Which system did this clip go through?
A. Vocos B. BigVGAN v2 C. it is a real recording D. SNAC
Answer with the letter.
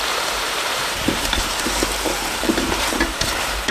B